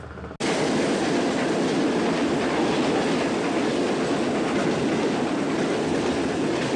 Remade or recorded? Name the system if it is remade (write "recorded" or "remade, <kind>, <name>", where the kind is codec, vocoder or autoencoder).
recorded